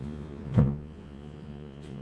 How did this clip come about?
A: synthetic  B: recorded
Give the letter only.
A